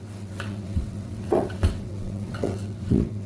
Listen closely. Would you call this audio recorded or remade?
remade